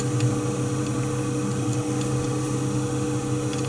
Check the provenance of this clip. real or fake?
real